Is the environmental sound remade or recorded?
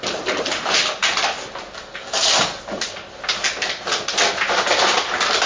recorded